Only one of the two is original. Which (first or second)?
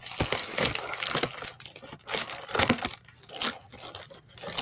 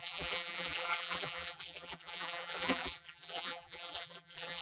first